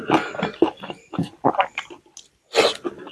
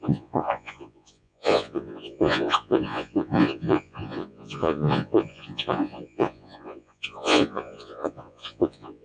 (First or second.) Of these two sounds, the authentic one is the first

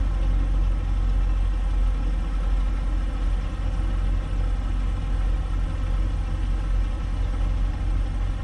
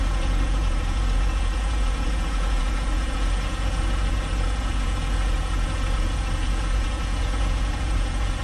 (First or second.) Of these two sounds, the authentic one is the first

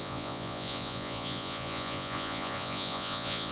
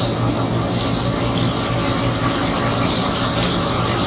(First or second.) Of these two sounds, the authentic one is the second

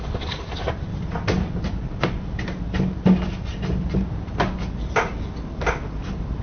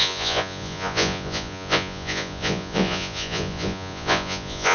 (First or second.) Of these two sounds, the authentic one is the first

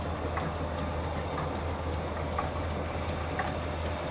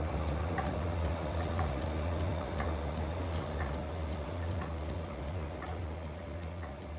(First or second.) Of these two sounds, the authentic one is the first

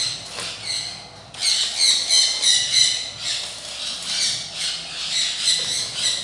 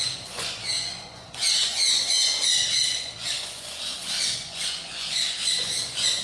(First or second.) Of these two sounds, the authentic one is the first